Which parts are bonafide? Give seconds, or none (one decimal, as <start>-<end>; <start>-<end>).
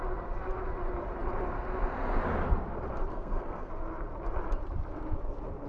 0.0-3.1; 3.7-5.7